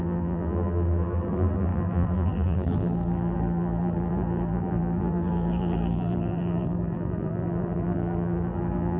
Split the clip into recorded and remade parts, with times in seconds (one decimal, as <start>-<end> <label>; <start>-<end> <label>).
0.0-9.0 remade